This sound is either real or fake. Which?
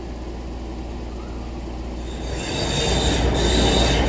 real